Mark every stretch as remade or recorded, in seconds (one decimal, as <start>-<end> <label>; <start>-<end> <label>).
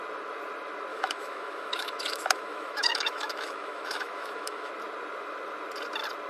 0.0-0.9 recorded; 0.9-4.7 remade; 4.7-6.3 recorded